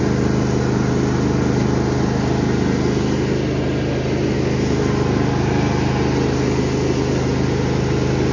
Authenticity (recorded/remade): recorded